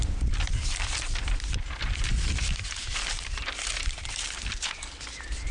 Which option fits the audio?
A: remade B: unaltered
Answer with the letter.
A